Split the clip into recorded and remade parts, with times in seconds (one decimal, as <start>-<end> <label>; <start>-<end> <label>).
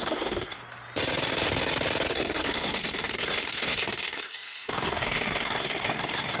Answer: 0.0-0.6 remade; 0.6-2.1 recorded; 2.1-6.4 remade